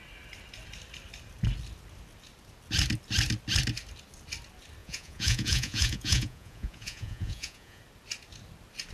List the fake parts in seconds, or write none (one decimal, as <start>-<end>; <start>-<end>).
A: 4.8-7.8